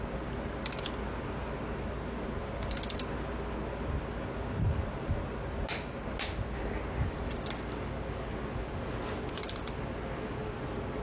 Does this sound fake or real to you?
real